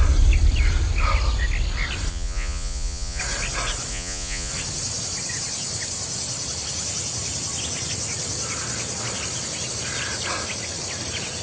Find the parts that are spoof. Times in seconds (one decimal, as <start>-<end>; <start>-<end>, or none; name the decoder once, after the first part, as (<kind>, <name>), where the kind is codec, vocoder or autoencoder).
2.1-3.2 (vocoder, Vocos); 3.9-4.5